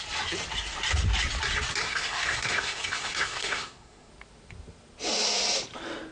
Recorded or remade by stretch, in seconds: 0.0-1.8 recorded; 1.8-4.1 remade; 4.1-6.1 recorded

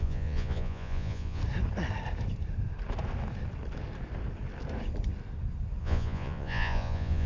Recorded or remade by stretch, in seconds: 0.0-1.4 remade; 1.4-5.8 recorded; 5.8-7.3 remade

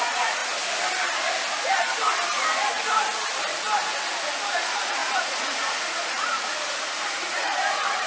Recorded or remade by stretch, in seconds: 0.0-0.4 remade; 0.4-4.5 recorded; 4.5-8.1 remade

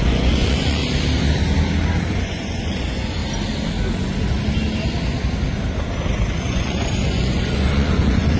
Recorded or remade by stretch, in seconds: 0.0-0.8 remade; 0.8-2.1 recorded; 2.1-3.2 remade; 3.2-6.4 recorded; 6.4-8.4 remade

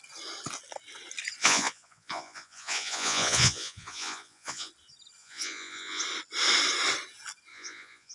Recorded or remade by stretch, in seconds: 0.0-1.4 recorded; 1.4-4.7 remade; 4.7-5.2 recorded; 5.2-6.0 remade; 6.0-7.5 recorded; 7.5-8.1 remade

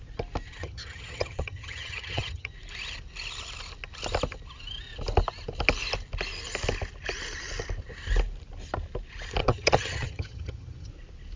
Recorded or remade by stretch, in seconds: 0.0-0.6 recorded; 0.6-2.5 remade; 2.5-9.4 recorded; 9.4-10.9 remade; 10.9-11.4 recorded

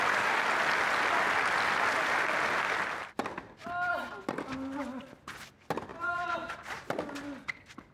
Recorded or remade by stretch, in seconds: 0.0-5.9 recorded; 5.9-7.0 remade; 7.0-7.9 recorded